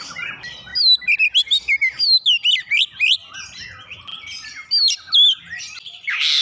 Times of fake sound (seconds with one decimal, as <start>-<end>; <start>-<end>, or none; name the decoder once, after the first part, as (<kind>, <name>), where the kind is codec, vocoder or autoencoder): none